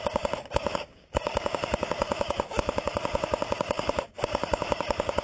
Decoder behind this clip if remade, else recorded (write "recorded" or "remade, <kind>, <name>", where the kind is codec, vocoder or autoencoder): remade, codec, DAC